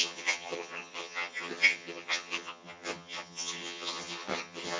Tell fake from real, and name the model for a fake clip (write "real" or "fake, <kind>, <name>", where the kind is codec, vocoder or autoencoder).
fake, vocoder, HiFi-GAN